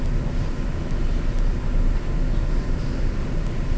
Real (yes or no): yes